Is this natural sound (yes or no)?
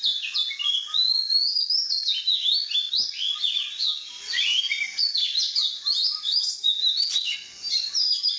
yes